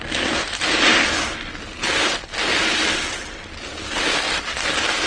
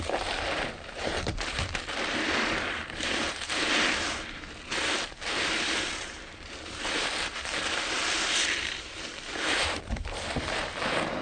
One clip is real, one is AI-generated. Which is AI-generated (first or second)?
second